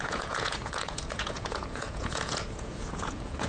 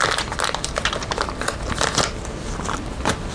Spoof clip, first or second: first